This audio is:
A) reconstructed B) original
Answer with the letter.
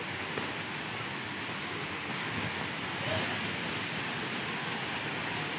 B